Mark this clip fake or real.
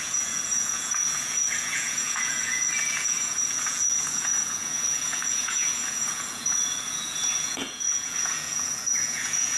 fake